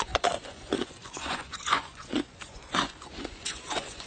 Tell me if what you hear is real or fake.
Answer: fake